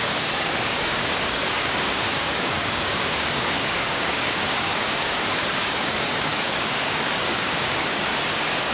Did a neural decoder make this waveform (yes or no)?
yes